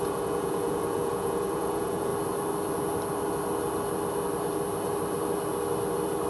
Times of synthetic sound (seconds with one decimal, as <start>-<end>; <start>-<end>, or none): 0.0-2.1